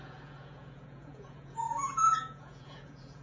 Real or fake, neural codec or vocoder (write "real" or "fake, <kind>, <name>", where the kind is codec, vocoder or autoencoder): fake, vocoder, Vocos